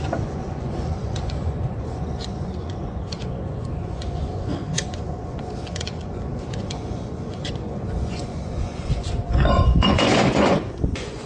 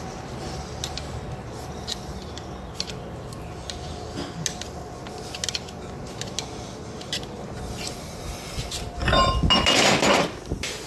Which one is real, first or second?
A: second